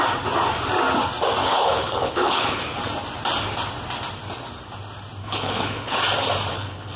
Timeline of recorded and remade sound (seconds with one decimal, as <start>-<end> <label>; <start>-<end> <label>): 0.0-1.4 recorded; 1.4-2.6 remade; 2.6-5.2 recorded; 5.2-6.0 remade; 6.0-6.5 recorded; 6.5-7.0 remade